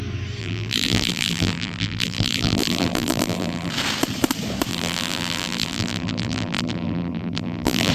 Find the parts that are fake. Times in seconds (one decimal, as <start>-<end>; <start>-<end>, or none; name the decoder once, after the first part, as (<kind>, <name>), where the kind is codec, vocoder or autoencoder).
0.4-3.7 (vocoder, BigVGAN v2); 4.7-7.9